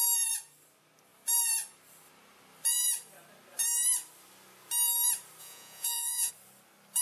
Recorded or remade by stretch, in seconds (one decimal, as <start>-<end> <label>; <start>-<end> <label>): 0.0-5.4 recorded; 5.4-6.3 remade; 6.3-7.0 recorded